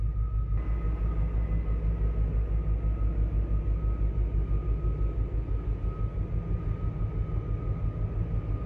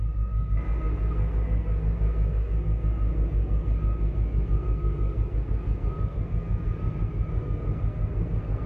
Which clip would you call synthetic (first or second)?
second